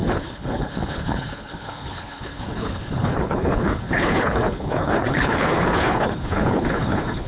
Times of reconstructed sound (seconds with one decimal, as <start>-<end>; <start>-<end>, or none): 0.0-7.3